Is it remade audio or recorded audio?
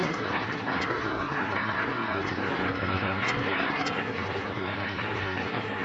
remade